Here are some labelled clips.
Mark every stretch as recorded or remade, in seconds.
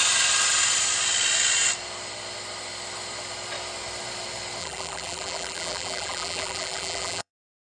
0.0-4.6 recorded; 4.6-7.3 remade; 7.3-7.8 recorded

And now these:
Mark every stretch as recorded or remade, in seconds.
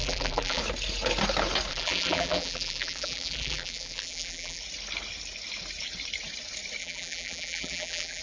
0.0-0.6 remade; 0.6-1.7 recorded; 1.7-4.6 remade; 4.6-6.8 recorded; 6.8-8.2 remade